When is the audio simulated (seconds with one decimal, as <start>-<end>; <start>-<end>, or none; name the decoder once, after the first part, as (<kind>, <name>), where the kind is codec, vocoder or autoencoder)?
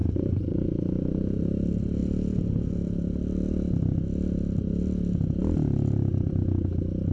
0.0-0.7 (vocoder, Vocos)